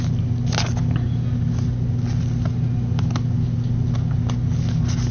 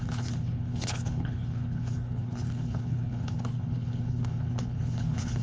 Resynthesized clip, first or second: second